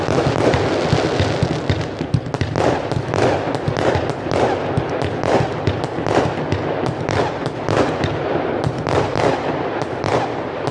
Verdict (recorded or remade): recorded